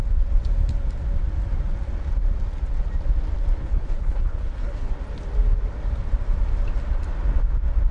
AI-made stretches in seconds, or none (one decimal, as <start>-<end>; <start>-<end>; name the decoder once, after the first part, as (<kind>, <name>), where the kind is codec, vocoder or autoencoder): 3.6-4.9 (codec, HILCodec)